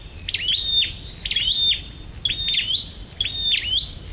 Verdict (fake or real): real